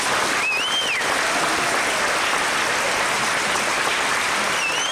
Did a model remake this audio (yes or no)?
no